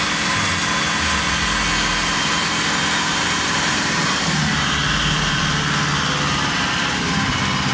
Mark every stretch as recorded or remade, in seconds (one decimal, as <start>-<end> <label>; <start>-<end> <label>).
0.0-3.1 recorded; 3.1-5.4 remade; 5.4-7.7 recorded